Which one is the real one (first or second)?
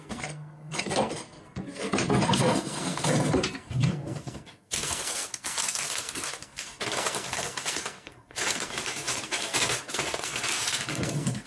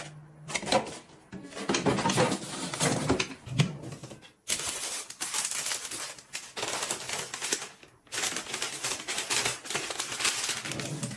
second